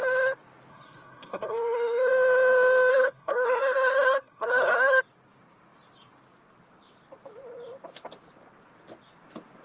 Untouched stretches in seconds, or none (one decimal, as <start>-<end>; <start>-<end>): 0.0-0.7; 2.1-2.9; 5.0-9.6